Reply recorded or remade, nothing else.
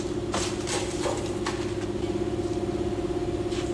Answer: recorded